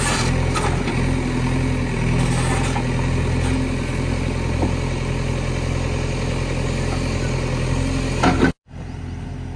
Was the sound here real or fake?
real